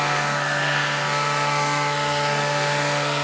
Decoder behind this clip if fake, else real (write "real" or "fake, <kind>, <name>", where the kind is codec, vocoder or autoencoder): fake, codec, SNAC